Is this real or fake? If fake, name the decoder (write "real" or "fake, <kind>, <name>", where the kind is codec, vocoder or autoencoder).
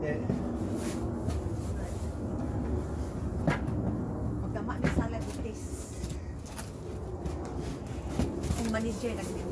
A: real